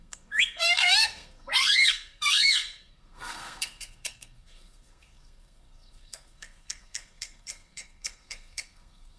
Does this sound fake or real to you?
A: fake